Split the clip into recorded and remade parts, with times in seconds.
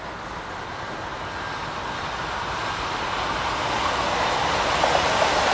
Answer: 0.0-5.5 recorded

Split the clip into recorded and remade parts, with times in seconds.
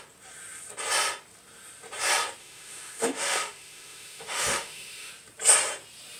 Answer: 0.0-2.4 recorded; 2.4-5.1 remade; 5.1-6.2 recorded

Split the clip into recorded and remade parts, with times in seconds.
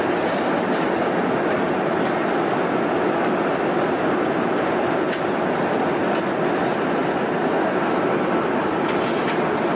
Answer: 0.0-9.8 recorded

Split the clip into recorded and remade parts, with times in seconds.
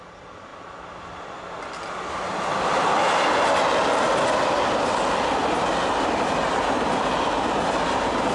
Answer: 0.0-8.3 recorded